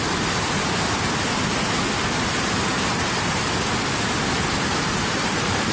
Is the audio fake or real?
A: real